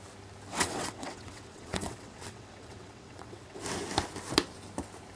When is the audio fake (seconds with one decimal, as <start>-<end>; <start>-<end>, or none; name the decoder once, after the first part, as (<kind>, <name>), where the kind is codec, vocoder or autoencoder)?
0.5-3.6 (vocoder, WaveNeXt)